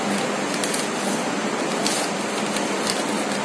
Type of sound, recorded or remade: recorded